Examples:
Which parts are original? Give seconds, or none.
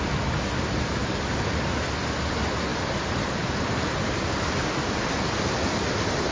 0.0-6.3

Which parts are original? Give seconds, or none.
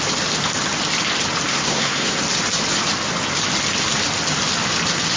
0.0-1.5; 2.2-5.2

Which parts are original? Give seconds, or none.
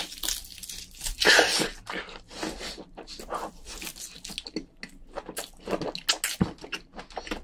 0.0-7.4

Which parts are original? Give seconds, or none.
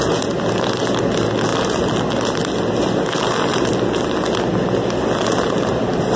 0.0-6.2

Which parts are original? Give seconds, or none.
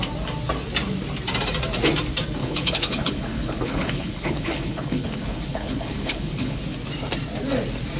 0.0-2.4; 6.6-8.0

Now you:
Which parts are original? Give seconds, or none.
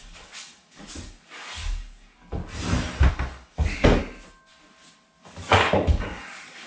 2.4-3.1; 4.0-5.2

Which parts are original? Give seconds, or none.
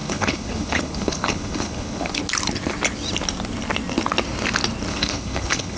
2.2-4.9